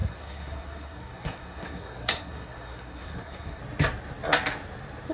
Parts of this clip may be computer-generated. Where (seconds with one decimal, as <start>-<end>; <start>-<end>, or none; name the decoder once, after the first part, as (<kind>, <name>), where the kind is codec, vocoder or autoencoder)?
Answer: 0.0-3.6 (codec, SNAC)